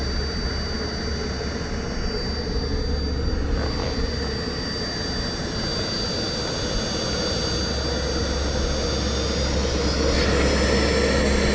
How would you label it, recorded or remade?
recorded